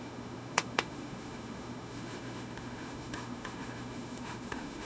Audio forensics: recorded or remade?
remade